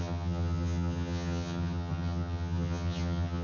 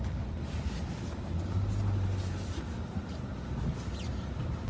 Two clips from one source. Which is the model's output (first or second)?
first